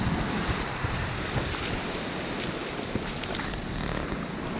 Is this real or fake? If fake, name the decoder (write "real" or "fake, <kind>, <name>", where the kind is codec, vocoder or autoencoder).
real